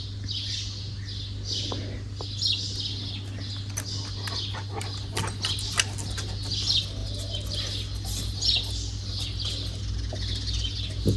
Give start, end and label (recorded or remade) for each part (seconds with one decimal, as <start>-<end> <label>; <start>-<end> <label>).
0.0-11.2 recorded